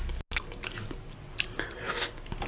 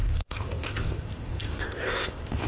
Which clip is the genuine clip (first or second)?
first